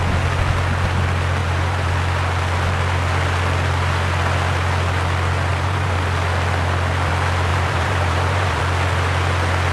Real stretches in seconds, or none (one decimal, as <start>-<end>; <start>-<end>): 0.0-1.4; 1.9-5.5; 6.0-7.5; 8.6-9.7